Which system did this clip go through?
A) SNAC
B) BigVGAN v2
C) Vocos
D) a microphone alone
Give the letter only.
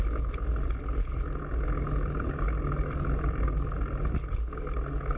D